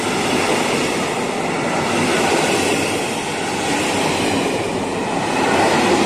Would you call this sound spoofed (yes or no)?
no